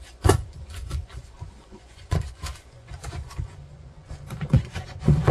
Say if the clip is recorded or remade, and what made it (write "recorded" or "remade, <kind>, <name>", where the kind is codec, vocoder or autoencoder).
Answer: remade, vocoder, Vocos